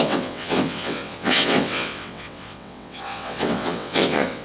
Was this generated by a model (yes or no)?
yes